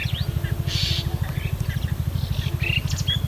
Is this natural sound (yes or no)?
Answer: yes